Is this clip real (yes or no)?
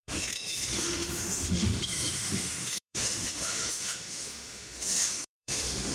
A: no